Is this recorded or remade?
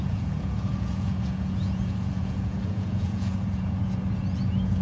remade